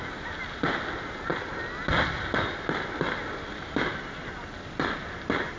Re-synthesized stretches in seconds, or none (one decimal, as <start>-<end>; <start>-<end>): none